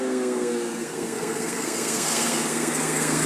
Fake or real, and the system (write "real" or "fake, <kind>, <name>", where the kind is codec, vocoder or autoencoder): fake, codec, SNAC